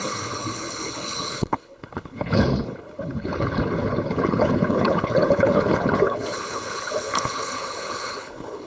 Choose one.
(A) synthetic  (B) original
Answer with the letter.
A